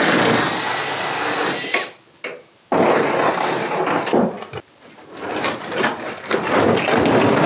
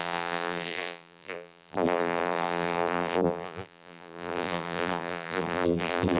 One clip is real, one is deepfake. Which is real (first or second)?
first